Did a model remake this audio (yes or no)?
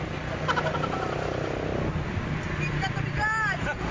no